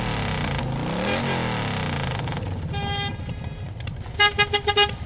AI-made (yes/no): no